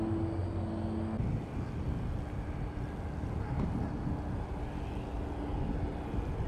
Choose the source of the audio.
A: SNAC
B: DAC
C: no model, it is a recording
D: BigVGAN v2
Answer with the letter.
C